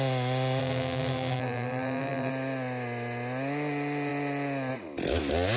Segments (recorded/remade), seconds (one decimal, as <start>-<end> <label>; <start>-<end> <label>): 0.0-0.6 recorded; 0.6-2.3 remade; 2.3-5.6 recorded